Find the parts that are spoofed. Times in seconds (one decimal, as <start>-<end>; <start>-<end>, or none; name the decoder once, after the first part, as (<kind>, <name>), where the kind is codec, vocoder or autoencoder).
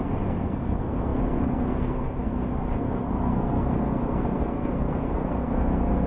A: 0.0-6.1 (codec, SNAC)